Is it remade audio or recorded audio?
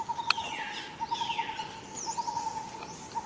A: recorded